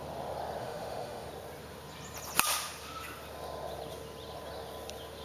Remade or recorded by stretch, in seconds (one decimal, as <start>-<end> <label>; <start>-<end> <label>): 0.0-0.6 recorded; 0.6-1.3 remade; 1.3-5.2 recorded